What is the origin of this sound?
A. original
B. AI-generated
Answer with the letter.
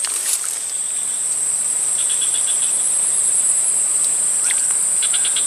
B